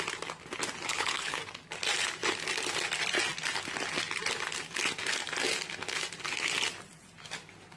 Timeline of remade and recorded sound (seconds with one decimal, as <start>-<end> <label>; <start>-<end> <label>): 0.0-0.9 recorded; 0.9-1.4 remade; 1.4-7.8 recorded